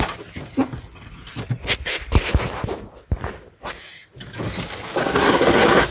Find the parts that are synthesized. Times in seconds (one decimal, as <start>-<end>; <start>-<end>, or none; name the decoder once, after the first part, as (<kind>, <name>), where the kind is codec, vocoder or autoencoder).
5.0-5.9 (codec, SNAC)